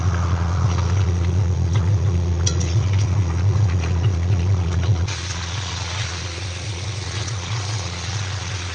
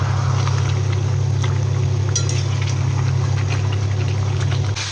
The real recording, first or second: second